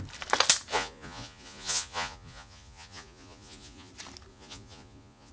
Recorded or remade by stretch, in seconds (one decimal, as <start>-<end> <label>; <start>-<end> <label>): 0.0-0.7 recorded; 0.7-3.9 remade; 3.9-4.3 recorded; 4.3-5.3 remade